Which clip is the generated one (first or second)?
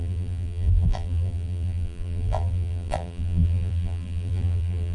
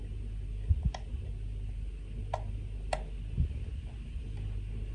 first